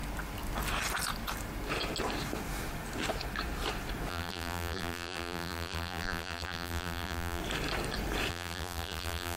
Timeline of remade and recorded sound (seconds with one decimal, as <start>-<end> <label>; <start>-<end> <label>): 0.0-4.1 recorded; 4.1-7.4 remade; 7.4-8.3 recorded; 8.3-9.4 remade